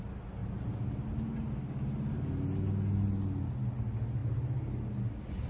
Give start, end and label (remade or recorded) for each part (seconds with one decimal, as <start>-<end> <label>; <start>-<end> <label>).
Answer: 0.0-5.5 recorded